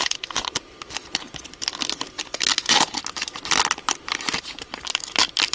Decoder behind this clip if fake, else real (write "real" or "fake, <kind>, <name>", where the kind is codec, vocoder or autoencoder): fake, vocoder, BigVGAN v2